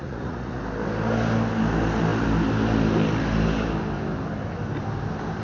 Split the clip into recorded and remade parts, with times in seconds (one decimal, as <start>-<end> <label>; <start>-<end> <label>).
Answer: 0.0-0.6 remade; 0.6-5.4 recorded